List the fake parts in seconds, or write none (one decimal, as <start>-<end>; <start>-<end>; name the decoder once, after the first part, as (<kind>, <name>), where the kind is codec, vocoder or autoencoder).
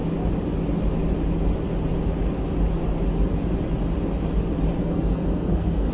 4.8-5.9 (codec, SNAC)